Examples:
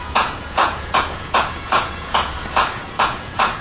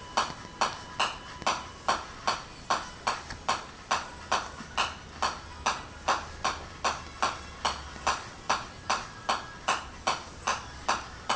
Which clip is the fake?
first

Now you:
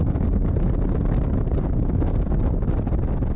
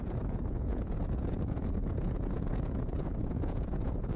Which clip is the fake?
second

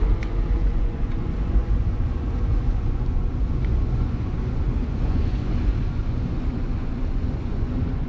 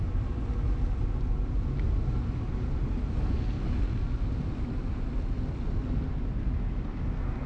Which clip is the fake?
first